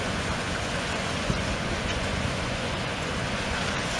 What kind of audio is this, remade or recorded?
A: remade